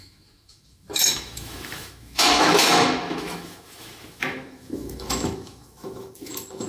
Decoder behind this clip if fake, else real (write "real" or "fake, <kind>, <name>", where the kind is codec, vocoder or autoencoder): fake, autoencoder, DAC-VAE